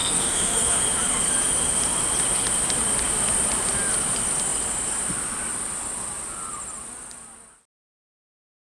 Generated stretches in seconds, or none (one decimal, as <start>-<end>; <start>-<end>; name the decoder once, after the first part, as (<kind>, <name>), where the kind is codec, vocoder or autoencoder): 0.0-0.8 (codec, SNAC)